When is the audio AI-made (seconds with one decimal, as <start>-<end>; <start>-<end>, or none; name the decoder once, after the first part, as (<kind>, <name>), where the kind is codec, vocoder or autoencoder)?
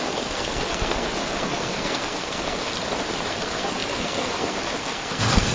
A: 0.0-2.7 (codec, SNAC); 3.3-5.5